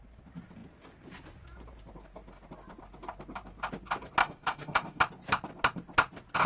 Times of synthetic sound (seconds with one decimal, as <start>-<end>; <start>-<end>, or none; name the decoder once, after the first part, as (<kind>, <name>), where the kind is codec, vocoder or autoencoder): 4.2-5.0 (autoencoder, DAC-VAE)